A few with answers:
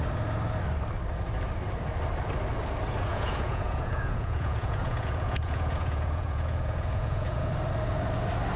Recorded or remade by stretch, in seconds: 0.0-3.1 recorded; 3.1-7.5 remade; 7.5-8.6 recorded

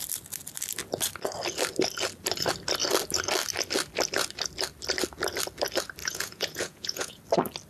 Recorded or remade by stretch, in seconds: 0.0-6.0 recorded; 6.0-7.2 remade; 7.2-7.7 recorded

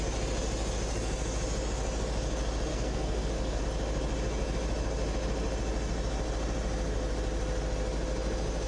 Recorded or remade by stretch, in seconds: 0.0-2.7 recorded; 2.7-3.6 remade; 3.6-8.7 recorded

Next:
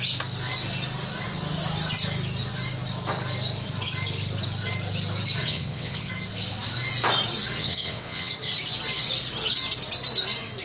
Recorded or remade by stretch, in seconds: 0.0-5.4 recorded; 5.4-6.1 remade; 6.1-7.6 recorded; 7.6-8.3 remade; 8.3-10.6 recorded

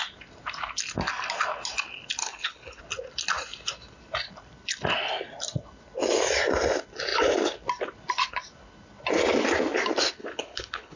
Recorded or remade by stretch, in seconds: 0.0-2.2 recorded; 2.2-2.8 remade; 2.8-10.2 recorded; 10.2-11.0 remade

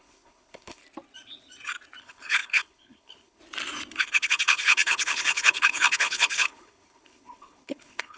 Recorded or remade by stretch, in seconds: 0.0-0.8 remade; 0.8-2.0 recorded; 2.0-3.4 remade; 3.4-4.0 recorded; 4.0-8.2 remade

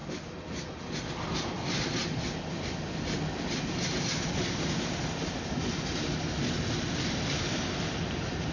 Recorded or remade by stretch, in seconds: 0.0-8.5 recorded